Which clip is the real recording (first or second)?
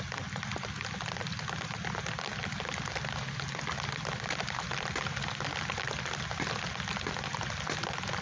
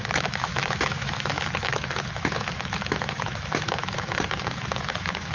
first